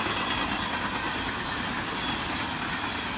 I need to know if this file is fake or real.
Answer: real